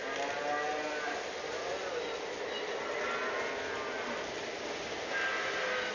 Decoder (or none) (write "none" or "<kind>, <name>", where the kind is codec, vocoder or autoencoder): none